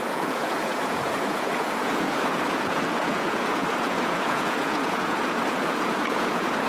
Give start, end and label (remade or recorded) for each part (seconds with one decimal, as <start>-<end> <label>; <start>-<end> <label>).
0.0-6.7 remade

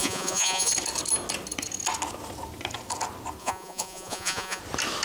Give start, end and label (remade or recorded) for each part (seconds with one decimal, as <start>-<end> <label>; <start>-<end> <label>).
0.0-0.7 remade; 0.7-3.4 recorded; 3.4-4.6 remade; 4.6-5.0 recorded

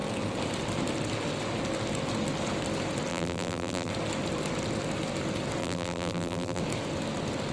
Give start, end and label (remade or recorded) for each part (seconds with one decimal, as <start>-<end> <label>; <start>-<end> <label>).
0.0-3.1 recorded; 3.1-3.9 remade; 3.9-5.6 recorded; 5.6-6.6 remade; 6.6-7.5 recorded